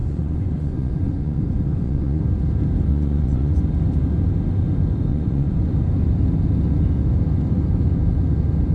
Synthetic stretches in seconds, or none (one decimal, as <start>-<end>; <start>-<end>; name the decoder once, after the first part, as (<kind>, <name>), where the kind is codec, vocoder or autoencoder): 0.0-2.2 (vocoder, Vocos); 2.9-3.6; 5.1-5.7